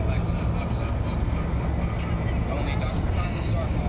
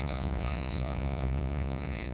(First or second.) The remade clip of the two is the second